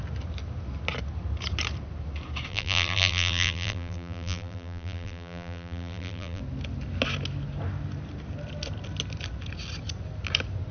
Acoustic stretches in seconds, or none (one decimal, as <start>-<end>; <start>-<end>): 0.0-2.5; 6.4-10.7